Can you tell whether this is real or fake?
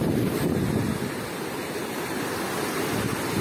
real